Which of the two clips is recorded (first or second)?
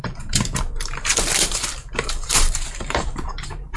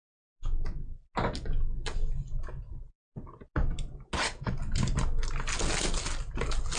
second